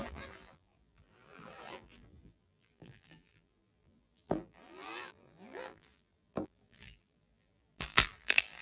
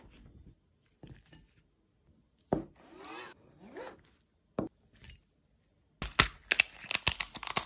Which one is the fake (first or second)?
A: first